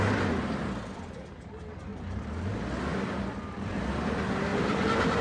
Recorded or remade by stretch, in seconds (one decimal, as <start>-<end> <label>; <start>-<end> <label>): 0.0-1.9 recorded; 1.9-2.5 remade; 2.5-2.9 recorded; 2.9-3.7 remade; 3.7-4.5 recorded; 4.5-5.2 remade